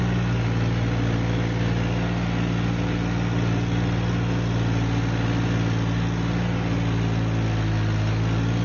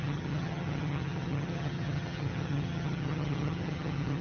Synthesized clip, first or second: second